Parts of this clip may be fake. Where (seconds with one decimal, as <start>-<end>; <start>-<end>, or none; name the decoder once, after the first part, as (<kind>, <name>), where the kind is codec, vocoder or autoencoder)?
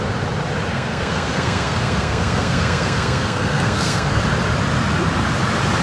0.7-4.2 (codec, SNAC)